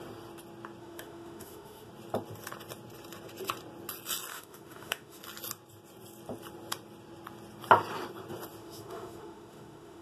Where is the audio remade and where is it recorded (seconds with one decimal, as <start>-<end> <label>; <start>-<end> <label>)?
0.0-0.8 recorded; 0.8-1.9 remade; 1.9-4.3 recorded; 4.3-5.2 remade; 5.2-8.6 recorded; 8.6-10.0 remade